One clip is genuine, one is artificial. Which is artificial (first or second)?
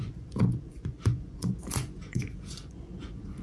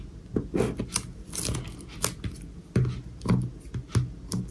first